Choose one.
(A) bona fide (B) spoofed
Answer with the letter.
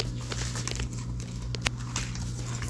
A